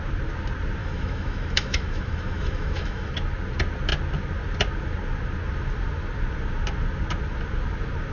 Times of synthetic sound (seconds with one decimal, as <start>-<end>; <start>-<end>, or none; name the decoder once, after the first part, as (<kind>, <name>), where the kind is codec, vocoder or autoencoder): 0.8-3.1 (autoencoder, DAC-VAE)